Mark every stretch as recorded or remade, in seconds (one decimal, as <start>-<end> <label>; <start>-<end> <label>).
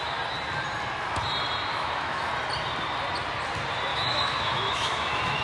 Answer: 0.0-1.7 recorded; 1.7-2.3 remade; 2.3-3.9 recorded; 3.9-5.4 remade